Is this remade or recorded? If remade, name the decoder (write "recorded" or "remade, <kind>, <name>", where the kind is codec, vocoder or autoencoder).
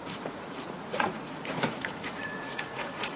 remade, vocoder, Vocos